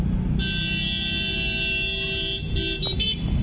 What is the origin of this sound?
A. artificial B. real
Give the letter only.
B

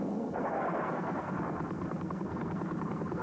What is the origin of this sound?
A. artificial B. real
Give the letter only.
A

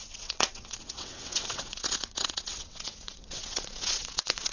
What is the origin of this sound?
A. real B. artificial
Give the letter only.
B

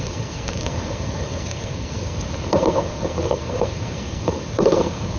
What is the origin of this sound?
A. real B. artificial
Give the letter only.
B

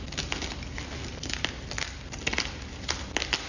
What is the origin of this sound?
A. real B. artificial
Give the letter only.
A